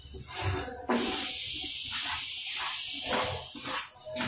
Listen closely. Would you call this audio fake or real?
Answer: real